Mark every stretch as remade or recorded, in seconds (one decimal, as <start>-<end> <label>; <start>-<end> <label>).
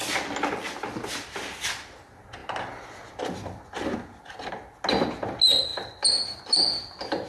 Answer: 0.0-7.3 recorded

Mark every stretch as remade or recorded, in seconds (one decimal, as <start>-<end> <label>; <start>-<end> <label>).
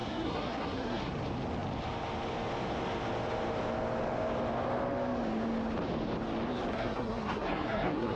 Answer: 0.0-1.1 remade; 1.1-6.7 recorded; 6.7-8.2 remade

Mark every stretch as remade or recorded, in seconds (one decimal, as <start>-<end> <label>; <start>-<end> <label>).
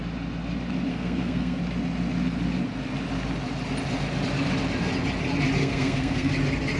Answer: 0.0-0.9 recorded; 0.9-1.6 remade; 1.6-5.6 recorded; 5.6-6.3 remade; 6.3-6.8 recorded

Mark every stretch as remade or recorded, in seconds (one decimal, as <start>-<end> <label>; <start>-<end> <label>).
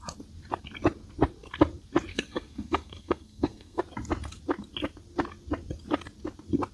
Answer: 0.0-2.1 recorded; 2.1-3.8 remade; 3.8-6.7 recorded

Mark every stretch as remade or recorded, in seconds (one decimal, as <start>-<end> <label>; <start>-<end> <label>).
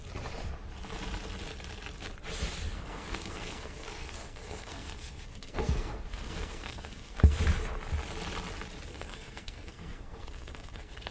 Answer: 0.0-2.7 recorded; 2.7-7.4 remade; 7.4-8.9 recorded; 8.9-11.1 remade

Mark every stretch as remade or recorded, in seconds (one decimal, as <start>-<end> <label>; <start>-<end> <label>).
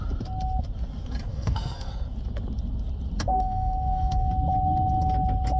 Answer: 0.0-1.3 recorded; 1.3-1.9 remade; 1.9-3.3 recorded; 3.3-4.3 remade; 4.3-5.6 recorded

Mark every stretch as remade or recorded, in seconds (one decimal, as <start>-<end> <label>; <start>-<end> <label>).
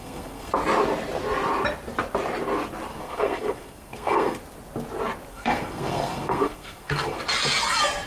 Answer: 0.0-0.5 remade; 0.5-2.9 recorded; 2.9-4.4 remade; 4.4-5.3 recorded; 5.3-7.2 remade; 7.2-8.1 recorded